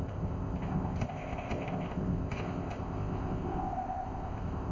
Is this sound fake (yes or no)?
yes